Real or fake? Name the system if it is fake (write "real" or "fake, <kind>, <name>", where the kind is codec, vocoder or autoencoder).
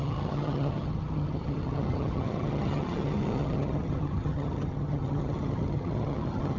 fake, vocoder, HiFi-GAN